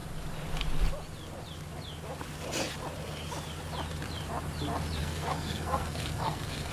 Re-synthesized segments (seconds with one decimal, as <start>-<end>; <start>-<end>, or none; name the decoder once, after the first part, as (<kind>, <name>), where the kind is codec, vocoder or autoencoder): 5.0-6.7 (codec, SNAC)

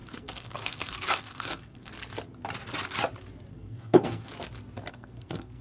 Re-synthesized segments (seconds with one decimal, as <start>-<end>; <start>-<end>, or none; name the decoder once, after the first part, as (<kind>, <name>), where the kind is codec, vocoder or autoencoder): 0.0-1.9 (codec, SNAC); 3.5-4.3; 4.9-5.6

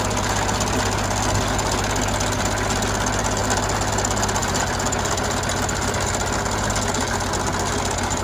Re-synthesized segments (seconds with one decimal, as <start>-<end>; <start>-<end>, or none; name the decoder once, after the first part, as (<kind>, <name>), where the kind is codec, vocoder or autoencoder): none

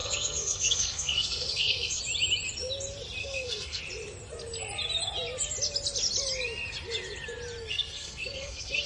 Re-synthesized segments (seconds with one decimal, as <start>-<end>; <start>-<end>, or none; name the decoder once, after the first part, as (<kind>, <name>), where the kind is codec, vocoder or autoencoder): 0.0-2.0 (codec, SNAC); 3.2-3.8; 7.7-8.9

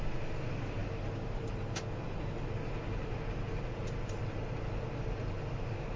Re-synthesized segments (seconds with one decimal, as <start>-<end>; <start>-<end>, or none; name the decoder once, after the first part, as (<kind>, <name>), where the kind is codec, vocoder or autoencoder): none

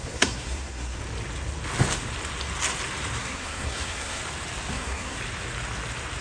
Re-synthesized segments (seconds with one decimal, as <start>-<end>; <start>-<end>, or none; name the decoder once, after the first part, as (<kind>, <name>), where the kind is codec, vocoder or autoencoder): 0.0-1.0 (codec, SNAC); 3.2-4.2; 4.7-5.2

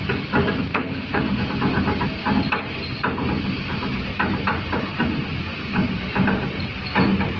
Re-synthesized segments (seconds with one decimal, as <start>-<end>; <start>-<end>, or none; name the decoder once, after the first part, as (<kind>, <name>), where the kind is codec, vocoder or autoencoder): 0.7-1.4 (codec, SNAC)

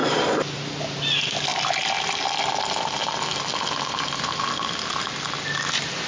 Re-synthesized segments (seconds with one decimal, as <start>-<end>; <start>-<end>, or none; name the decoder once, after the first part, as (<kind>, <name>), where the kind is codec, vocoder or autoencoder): none